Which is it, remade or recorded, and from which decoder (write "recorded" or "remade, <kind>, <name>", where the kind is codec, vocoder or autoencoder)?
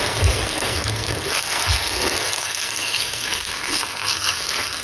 remade, codec, SNAC